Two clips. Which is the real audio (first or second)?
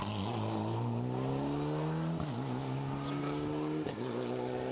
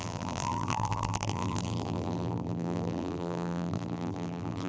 first